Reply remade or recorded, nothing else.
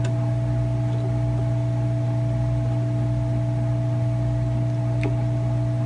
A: recorded